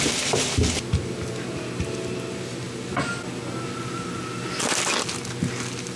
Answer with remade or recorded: recorded